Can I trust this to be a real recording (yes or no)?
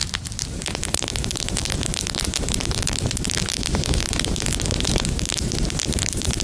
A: no